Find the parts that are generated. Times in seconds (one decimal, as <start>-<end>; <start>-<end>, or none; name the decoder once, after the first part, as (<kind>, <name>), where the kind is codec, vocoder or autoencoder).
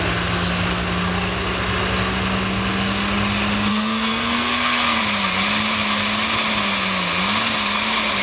3.7-5.0 (codec, SNAC)